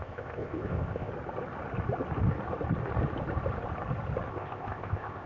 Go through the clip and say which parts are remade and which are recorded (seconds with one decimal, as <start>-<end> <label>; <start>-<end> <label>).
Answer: 0.0-1.1 remade; 1.1-4.3 recorded; 4.3-5.3 remade